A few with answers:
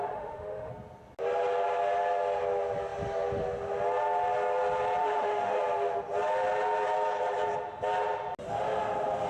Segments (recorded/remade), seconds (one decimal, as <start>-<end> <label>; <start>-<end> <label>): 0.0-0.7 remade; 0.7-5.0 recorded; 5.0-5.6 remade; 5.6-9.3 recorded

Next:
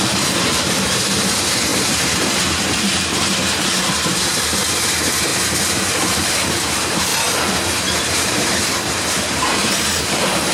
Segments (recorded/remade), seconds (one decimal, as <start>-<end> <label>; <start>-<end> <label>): 0.0-7.1 remade; 7.1-7.8 recorded; 7.8-10.5 remade

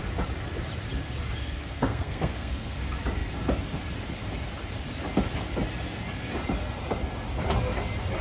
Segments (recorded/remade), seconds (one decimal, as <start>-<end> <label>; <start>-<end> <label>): 0.0-1.4 recorded; 1.4-2.8 remade; 2.8-8.2 recorded

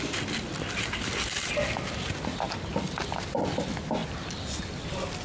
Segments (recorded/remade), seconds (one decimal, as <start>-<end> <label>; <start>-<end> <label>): 0.0-5.2 recorded

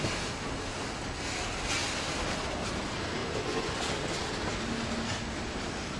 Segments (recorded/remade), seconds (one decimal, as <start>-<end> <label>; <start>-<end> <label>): 0.0-3.2 recorded; 3.2-3.8 remade; 3.8-6.0 recorded